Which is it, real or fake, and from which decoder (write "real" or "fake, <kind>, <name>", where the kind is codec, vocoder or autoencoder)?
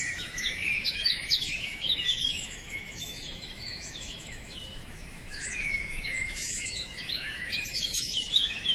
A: fake, autoencoder, DAC-VAE